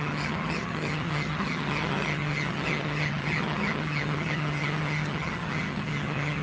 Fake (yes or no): yes